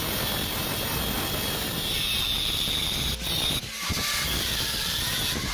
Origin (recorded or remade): recorded